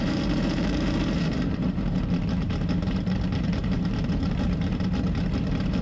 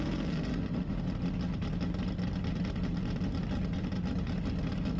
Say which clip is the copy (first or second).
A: first